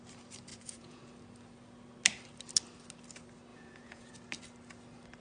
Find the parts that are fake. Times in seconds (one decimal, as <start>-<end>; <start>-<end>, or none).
0.5-1.0; 3.5-4.1